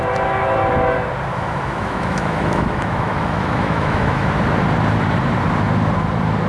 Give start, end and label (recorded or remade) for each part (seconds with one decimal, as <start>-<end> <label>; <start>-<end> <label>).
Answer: 0.0-1.3 recorded; 1.3-4.3 remade; 4.3-6.5 recorded